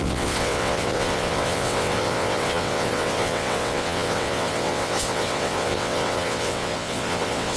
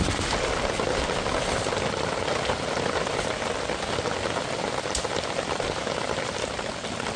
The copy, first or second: first